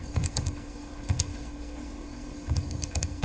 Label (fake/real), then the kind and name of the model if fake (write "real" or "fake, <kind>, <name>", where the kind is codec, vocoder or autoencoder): fake, codec, SNAC